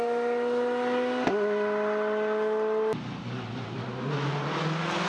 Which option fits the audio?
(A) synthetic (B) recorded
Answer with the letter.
B